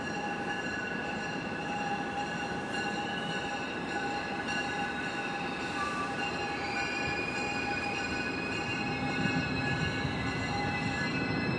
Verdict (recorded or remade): remade